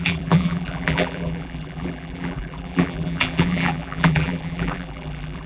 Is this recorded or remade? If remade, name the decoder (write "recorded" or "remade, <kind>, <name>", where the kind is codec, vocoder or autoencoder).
remade, vocoder, BigVGAN v2